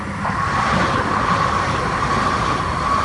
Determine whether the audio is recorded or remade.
recorded